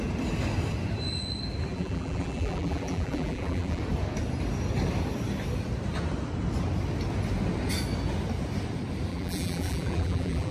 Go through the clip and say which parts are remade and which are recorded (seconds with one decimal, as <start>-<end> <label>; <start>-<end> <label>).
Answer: 0.0-1.7 recorded; 1.7-3.8 remade; 3.8-9.1 recorded; 9.1-10.5 remade